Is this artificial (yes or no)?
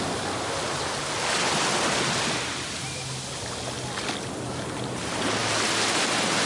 no